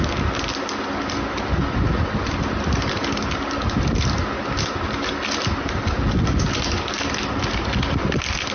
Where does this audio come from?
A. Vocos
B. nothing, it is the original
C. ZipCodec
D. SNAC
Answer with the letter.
B